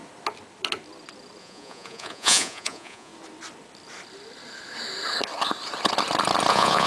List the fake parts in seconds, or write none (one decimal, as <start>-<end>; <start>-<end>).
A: 1.4-3.1; 6.5-6.9